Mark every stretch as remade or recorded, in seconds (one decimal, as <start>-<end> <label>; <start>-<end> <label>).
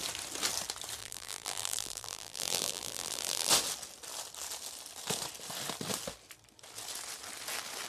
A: 0.0-1.0 recorded; 1.0-3.5 remade; 3.5-7.9 recorded